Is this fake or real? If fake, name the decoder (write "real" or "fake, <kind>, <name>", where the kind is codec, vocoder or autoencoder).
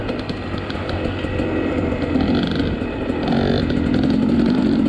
real